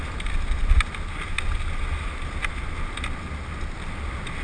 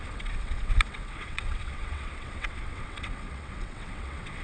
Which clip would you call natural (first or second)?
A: first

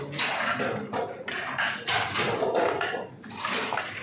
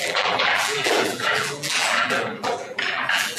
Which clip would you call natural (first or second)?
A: first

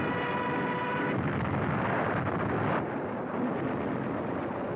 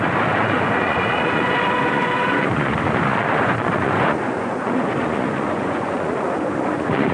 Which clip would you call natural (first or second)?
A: first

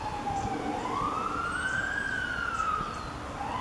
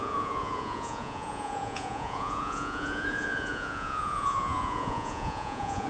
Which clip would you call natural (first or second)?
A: first